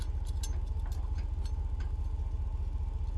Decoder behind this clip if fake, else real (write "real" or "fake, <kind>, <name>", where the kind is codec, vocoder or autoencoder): real